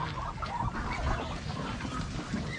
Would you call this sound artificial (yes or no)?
no